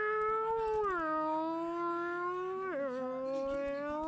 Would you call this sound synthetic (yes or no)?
no